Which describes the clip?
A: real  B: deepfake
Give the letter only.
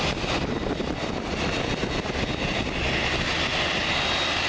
A